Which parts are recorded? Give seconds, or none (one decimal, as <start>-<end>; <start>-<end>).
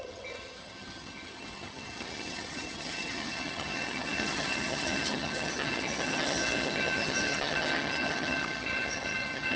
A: none